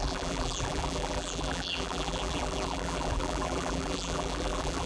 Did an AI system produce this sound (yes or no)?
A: yes